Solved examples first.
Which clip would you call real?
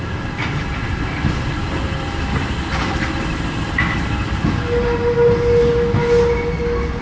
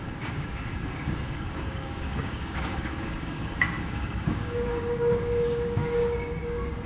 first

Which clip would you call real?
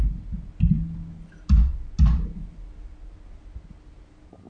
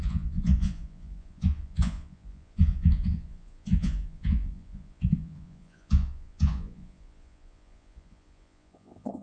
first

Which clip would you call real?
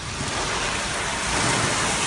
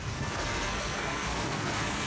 first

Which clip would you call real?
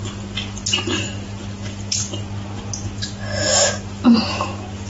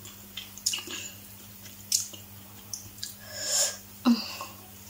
first